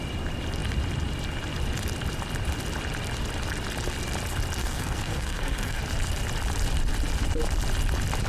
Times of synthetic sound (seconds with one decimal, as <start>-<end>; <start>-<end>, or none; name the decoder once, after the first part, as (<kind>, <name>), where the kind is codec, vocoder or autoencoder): 4.6-5.8 (codec, SNAC)